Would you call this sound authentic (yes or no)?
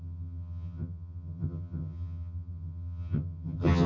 no